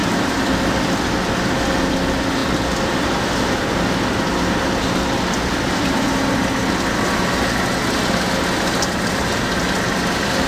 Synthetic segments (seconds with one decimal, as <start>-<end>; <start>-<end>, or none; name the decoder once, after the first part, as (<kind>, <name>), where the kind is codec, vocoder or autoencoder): none